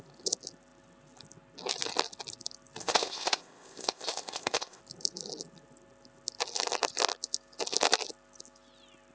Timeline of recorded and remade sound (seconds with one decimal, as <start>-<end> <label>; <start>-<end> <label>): 0.0-2.8 recorded; 2.8-4.8 remade; 4.8-9.1 recorded